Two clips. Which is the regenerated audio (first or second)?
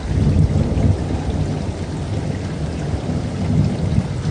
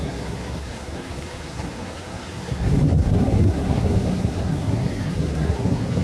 second